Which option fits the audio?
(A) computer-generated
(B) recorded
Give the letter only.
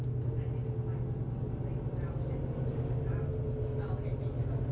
B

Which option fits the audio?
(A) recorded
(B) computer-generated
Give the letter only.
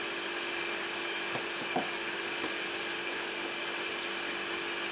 A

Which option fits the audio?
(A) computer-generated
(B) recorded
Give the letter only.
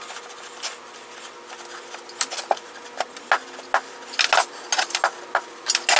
B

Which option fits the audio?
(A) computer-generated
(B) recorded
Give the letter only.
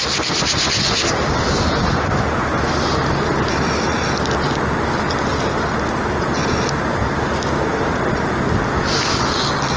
B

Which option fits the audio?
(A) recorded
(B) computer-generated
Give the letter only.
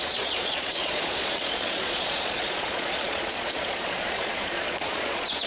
B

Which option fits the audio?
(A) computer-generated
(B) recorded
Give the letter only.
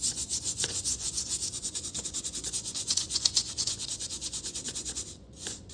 A